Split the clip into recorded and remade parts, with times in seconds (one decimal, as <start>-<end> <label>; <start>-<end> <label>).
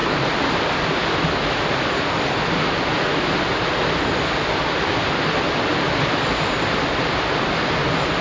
0.0-8.2 recorded